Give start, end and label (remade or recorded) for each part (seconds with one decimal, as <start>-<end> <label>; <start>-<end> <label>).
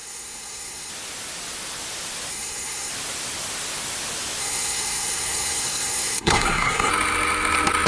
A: 0.0-0.9 remade; 0.9-2.3 recorded; 2.3-2.9 remade; 2.9-4.4 recorded; 4.4-6.9 remade; 6.9-7.9 recorded